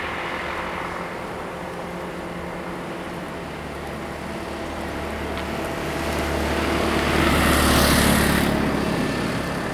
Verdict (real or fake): real